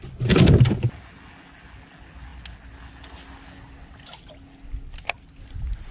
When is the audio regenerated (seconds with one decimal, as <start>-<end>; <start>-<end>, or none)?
none